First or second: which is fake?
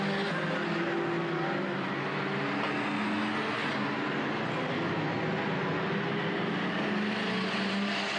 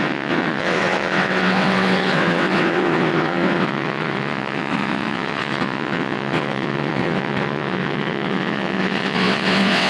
second